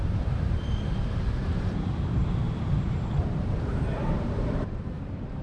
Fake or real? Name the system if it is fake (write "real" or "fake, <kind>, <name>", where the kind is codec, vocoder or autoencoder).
fake, vocoder, BigVGAN v2